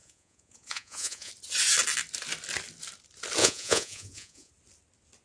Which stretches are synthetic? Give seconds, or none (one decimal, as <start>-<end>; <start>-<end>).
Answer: 0.0-1.3; 3.4-4.5

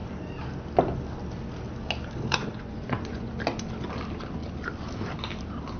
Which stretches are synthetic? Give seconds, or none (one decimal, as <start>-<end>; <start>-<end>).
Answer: 2.4-3.3

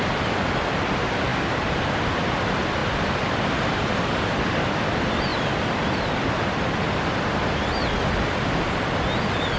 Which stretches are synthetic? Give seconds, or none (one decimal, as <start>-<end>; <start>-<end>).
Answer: none